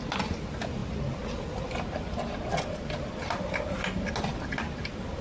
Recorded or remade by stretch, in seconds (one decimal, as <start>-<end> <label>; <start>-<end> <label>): 0.0-5.2 recorded